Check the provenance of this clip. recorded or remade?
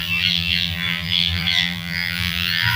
remade